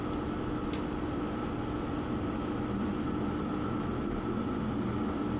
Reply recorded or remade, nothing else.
recorded